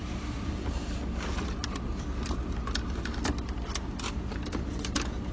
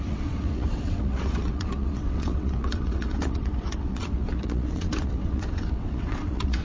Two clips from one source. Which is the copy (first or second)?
second